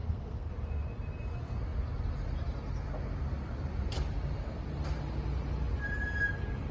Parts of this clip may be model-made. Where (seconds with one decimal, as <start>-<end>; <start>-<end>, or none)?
0.0-0.5